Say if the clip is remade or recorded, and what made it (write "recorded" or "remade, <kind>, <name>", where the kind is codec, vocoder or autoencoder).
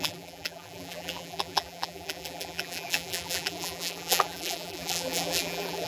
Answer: remade, vocoder, BigVGAN v2